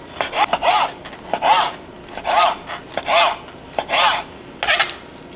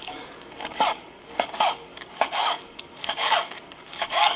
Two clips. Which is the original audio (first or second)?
first